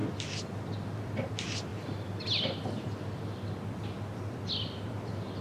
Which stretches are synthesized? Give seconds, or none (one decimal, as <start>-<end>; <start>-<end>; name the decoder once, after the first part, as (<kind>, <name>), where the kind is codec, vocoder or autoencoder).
none